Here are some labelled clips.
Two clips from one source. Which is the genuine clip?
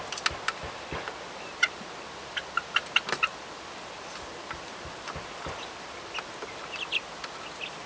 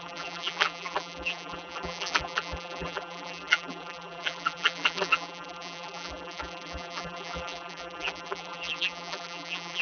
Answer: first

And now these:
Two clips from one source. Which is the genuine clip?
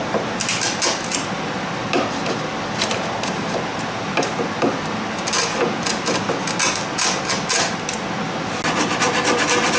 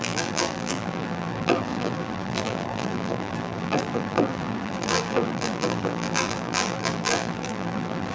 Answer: first